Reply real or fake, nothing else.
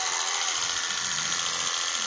real